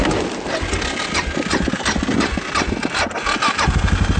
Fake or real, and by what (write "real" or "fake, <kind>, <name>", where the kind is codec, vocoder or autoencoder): real